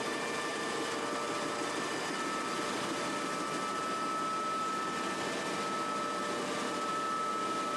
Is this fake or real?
real